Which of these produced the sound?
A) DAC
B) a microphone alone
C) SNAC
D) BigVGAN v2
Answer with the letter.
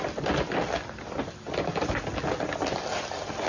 B